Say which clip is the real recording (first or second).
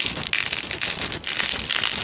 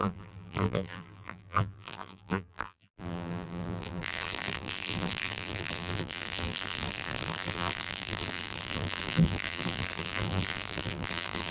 first